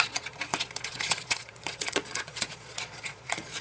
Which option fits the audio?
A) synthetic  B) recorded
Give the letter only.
A